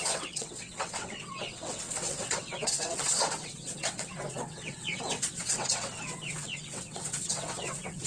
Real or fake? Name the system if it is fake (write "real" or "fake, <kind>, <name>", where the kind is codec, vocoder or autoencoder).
fake, vocoder, WaveNeXt